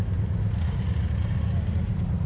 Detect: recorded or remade recorded